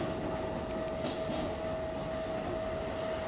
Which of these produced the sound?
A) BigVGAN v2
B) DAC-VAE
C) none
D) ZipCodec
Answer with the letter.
C